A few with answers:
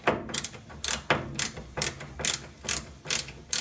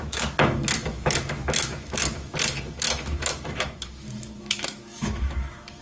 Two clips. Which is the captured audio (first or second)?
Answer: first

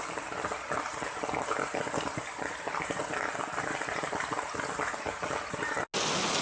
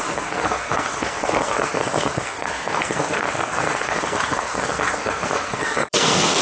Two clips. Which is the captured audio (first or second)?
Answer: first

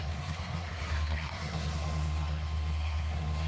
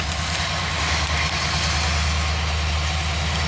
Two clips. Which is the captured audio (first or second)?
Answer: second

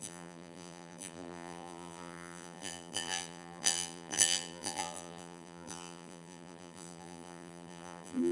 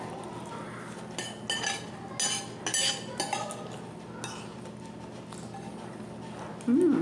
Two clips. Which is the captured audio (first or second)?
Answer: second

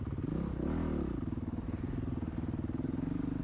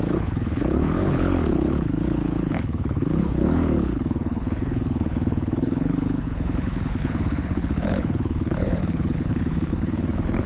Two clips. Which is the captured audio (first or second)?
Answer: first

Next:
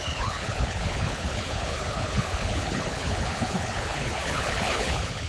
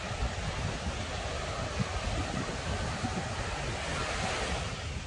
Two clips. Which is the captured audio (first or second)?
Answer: second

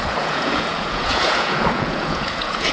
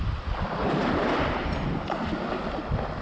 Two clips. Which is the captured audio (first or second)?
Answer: second